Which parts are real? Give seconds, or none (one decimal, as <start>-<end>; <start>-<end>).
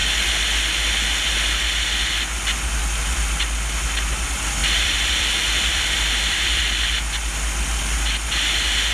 0.0-4.6; 6.6-8.9